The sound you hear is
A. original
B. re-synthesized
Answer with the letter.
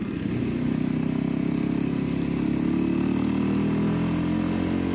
A